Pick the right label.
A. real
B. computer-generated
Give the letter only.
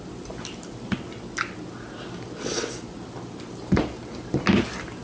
A